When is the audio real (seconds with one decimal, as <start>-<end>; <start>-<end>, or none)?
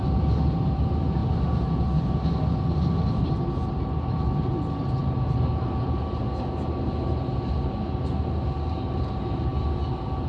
0.0-10.3